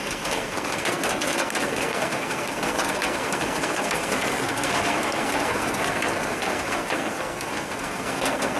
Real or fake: fake